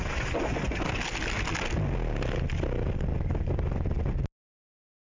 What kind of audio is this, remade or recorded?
recorded